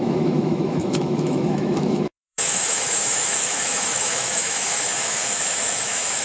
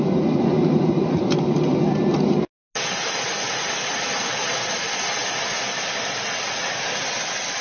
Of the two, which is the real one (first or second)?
second